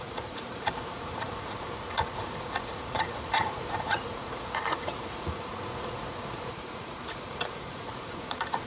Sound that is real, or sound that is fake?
fake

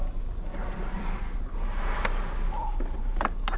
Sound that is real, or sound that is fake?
real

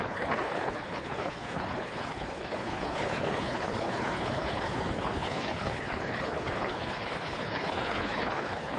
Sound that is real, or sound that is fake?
fake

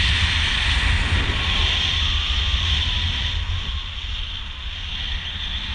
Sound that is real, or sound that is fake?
real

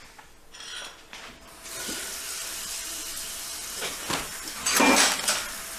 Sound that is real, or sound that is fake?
real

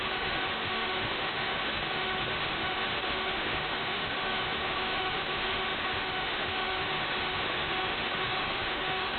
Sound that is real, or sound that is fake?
fake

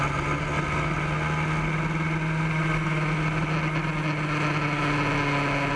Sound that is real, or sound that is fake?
real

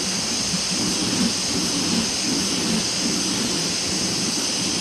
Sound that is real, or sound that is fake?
real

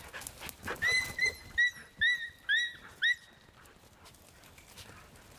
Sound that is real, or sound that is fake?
real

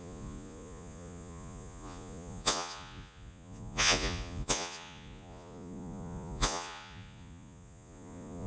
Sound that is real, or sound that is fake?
fake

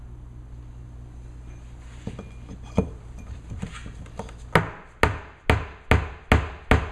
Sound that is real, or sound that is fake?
real